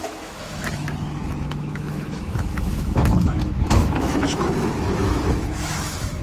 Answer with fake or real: fake